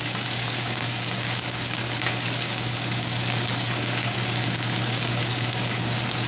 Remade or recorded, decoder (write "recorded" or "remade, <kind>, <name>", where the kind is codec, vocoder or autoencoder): remade, codec, DAC